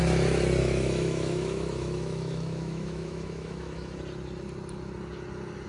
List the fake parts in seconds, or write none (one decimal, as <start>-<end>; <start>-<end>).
0.6-4.0